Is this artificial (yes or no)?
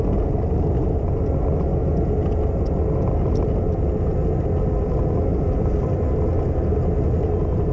no